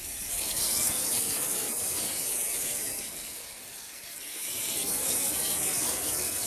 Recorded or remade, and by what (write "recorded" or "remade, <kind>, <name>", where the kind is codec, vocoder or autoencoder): remade, codec, SNAC